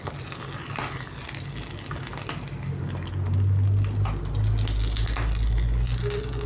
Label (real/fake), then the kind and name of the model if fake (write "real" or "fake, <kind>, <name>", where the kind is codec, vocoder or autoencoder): real